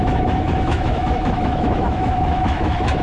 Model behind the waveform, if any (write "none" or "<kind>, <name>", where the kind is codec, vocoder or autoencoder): autoencoder, DAC-VAE